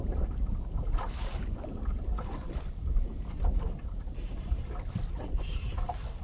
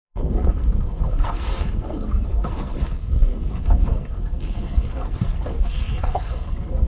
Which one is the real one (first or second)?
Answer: first